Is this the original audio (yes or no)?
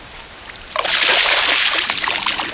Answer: yes